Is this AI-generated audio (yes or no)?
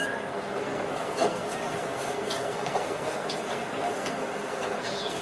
yes